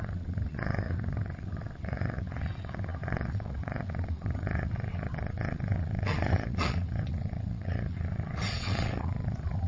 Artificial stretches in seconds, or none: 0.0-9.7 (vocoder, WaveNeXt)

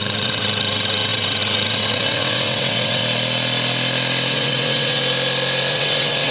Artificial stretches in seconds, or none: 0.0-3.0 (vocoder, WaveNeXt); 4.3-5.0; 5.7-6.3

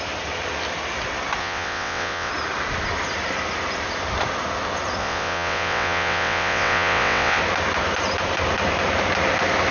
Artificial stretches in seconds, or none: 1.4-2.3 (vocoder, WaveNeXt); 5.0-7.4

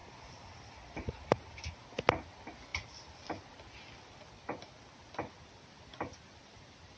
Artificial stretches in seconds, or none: none